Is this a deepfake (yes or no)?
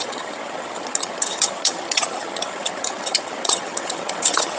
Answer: yes